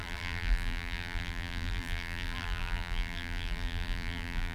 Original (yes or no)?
no